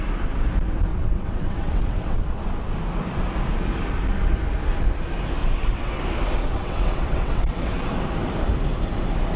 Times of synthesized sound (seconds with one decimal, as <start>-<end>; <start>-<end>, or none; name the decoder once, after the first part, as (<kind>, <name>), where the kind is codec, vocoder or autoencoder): 0.9-2.2 (vocoder, WaveNeXt); 5.4-6.0; 6.5-7.9